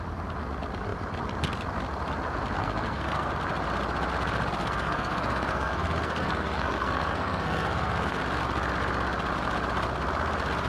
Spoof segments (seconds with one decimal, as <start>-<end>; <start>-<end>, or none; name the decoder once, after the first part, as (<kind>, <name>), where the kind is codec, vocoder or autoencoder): 2.6-3.3 (codec, SNAC); 4.6-8.2